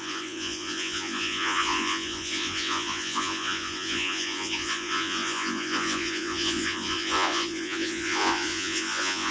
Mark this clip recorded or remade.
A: remade